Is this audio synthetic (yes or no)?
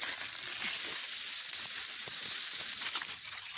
no